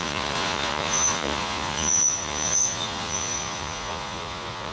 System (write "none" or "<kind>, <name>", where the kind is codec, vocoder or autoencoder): vocoder, Vocos